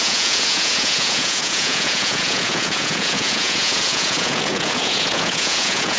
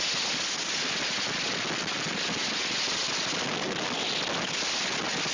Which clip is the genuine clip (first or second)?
second